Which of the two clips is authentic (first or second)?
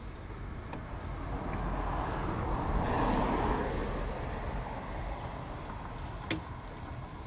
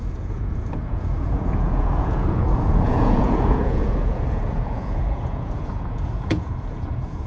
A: first